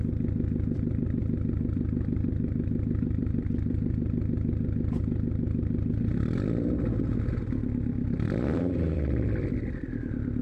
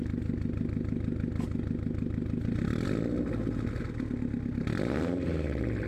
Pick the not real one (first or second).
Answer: first